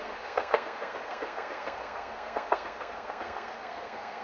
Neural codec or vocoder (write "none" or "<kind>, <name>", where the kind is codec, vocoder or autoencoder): codec, SNAC